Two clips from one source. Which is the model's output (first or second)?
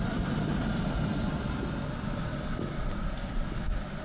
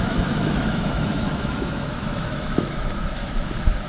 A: second